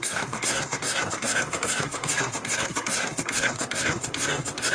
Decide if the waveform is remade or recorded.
remade